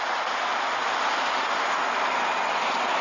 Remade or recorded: recorded